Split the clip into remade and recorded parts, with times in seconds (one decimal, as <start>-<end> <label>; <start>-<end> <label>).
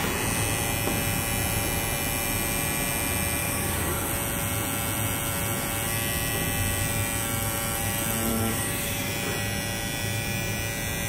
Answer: 0.0-3.4 recorded; 3.4-4.1 remade; 4.1-8.3 recorded; 8.3-9.1 remade; 9.1-11.1 recorded